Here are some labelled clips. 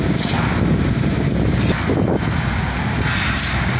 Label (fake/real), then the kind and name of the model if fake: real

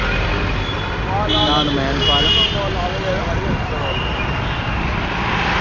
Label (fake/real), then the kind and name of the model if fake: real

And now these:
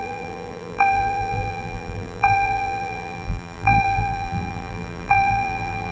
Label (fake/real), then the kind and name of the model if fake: fake, vocoder, BigVGAN v2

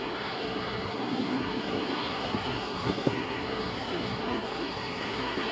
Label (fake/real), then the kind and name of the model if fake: fake, codec, SNAC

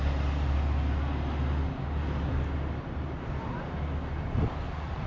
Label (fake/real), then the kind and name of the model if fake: real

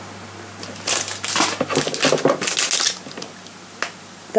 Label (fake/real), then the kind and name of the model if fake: real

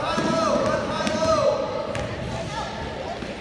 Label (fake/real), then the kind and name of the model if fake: real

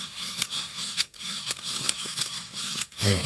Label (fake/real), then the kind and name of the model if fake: fake, codec, SNAC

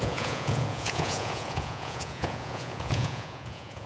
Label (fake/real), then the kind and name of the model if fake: fake, vocoder, Vocos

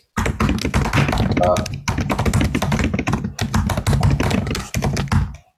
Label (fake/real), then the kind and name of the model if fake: real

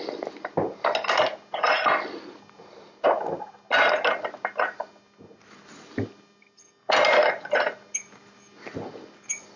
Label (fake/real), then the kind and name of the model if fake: real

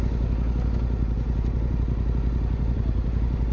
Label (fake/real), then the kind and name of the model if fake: real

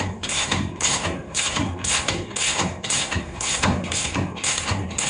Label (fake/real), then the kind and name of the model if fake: fake, codec, SNAC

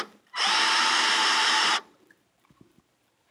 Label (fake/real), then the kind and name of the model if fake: fake, vocoder, BigVGAN v2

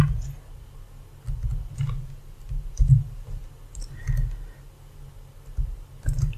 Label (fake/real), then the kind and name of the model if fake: real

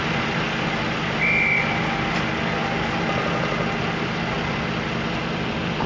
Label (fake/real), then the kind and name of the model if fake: real